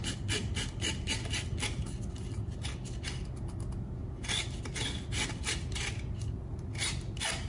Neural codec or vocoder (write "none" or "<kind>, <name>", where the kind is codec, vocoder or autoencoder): none